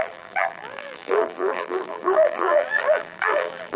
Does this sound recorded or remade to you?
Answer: remade